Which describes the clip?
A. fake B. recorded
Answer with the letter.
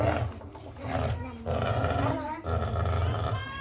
B